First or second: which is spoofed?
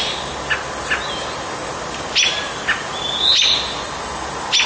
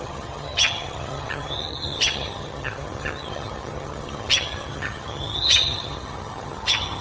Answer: second